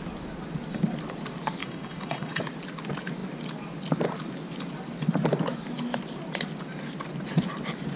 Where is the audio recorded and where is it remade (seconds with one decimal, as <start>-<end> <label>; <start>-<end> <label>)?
0.0-1.6 recorded; 1.6-2.4 remade; 2.4-8.0 recorded